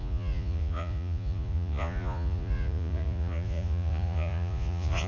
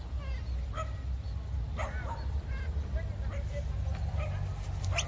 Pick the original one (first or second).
second